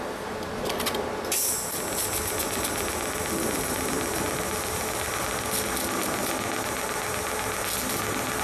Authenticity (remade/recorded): recorded